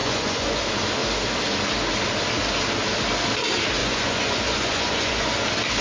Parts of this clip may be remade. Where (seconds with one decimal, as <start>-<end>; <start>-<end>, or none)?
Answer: 0.0-0.6; 3.8-5.3